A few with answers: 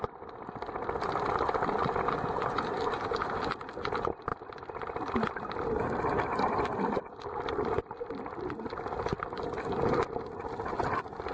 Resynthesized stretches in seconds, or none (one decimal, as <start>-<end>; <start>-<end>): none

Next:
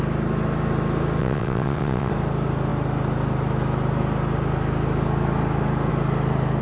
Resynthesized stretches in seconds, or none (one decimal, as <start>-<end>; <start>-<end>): 1.2-2.1

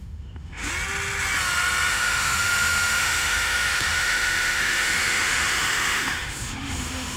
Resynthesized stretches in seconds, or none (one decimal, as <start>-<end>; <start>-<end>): 0.0-0.7; 1.9-7.2